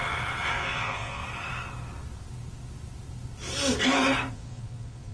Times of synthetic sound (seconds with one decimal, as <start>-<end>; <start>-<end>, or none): 0.5-1.2; 4.3-5.1